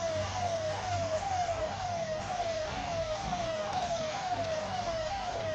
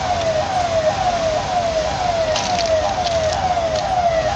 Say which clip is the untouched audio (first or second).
second